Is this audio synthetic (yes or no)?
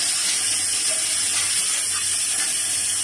no